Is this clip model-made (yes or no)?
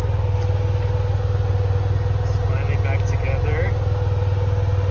no